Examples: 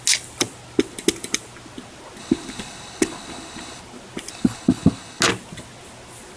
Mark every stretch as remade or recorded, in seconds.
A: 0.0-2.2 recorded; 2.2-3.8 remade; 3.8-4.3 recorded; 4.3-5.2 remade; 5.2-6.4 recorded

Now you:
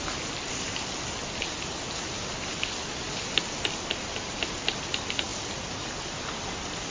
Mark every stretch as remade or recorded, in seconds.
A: 0.0-6.9 recorded

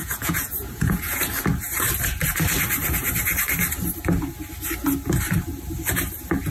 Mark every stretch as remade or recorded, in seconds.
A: 0.0-1.2 remade; 1.2-6.5 recorded

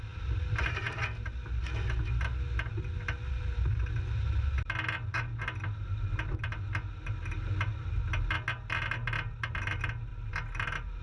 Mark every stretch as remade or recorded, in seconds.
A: 0.0-11.0 recorded

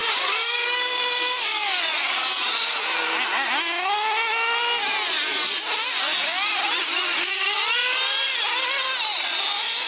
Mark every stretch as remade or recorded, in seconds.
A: 0.0-1.8 remade; 1.8-9.9 recorded

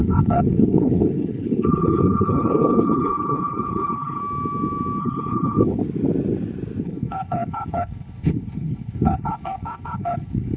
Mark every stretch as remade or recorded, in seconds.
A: 0.0-4.2 remade; 4.2-5.0 recorded; 5.0-5.8 remade; 5.8-6.8 recorded; 6.8-10.6 remade